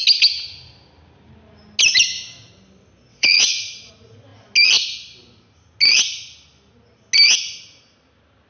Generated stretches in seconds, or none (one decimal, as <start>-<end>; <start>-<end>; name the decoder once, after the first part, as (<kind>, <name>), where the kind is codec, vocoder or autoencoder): 3.1-3.9 (vocoder, WaveNeXt)